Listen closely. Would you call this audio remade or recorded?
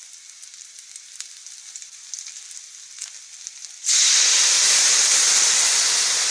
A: recorded